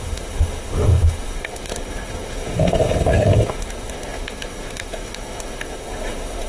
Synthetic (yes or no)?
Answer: yes